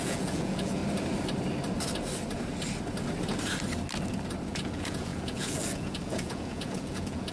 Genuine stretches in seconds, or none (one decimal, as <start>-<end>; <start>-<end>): 0.8-4.5